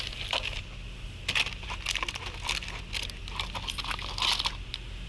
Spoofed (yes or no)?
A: no